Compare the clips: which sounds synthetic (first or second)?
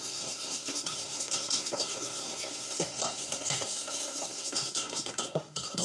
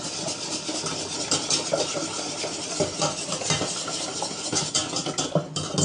first